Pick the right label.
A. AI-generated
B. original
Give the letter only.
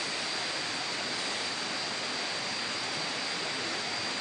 B